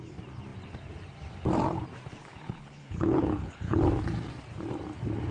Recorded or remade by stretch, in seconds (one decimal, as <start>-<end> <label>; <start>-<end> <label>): 0.0-2.2 recorded; 2.2-3.8 remade; 3.8-5.3 recorded